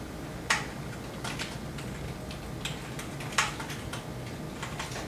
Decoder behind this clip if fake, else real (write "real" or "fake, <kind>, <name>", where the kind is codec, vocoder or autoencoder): real